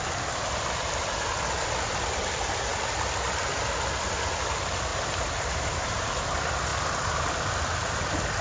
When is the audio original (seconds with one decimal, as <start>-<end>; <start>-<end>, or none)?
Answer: 0.0-4.9; 6.0-8.4